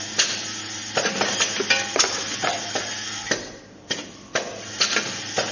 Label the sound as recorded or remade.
recorded